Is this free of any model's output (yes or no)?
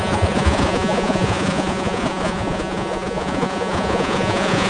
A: no